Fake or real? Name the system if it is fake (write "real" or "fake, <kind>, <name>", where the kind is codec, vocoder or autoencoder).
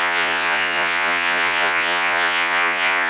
fake, vocoder, Vocos